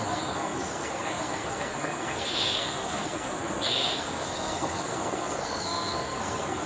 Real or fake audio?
fake